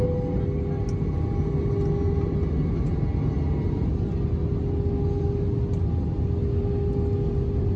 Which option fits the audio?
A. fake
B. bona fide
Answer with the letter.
B